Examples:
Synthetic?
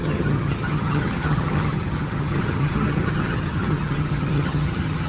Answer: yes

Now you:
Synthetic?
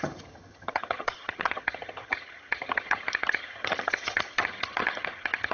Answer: yes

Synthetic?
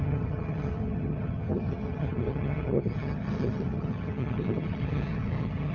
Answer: yes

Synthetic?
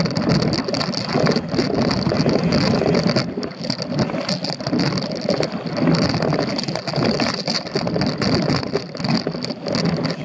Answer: no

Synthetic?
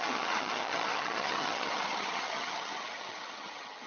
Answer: yes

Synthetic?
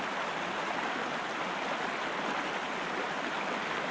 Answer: no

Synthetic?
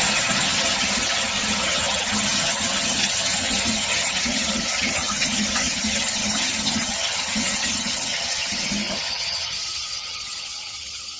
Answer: yes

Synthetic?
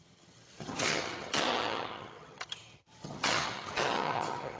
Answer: yes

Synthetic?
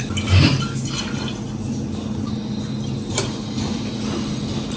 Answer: no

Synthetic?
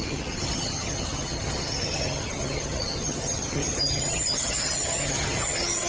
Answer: yes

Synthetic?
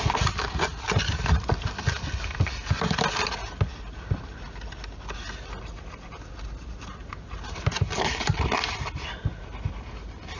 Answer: no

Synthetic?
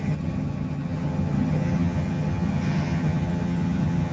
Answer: yes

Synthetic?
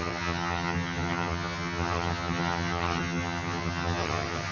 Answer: yes